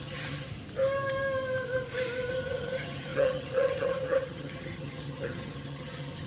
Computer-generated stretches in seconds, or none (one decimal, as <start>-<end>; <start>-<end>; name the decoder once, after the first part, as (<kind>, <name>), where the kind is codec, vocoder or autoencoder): 0.0-0.5 (vocoder, HiFi-GAN); 2.3-6.3